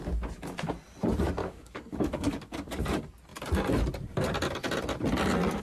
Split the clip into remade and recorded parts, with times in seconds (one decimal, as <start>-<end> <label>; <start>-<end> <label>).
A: 0.0-1.4 recorded; 1.4-2.8 remade; 2.8-5.6 recorded